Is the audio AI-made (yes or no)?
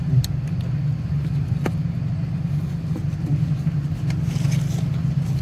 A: no